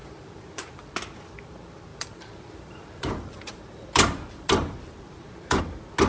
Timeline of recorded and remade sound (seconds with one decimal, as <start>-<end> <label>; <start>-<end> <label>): 0.0-0.9 remade; 0.9-1.9 recorded; 1.9-5.6 remade; 5.6-6.1 recorded